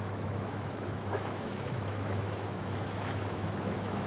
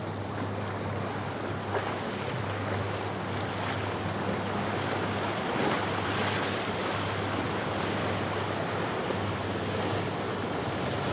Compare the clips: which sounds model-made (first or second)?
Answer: first